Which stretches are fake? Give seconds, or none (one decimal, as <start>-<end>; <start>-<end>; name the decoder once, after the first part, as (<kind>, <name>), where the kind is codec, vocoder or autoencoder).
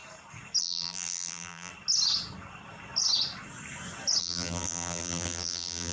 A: 0.6-1.7 (vocoder, BigVGAN v2); 4.2-5.9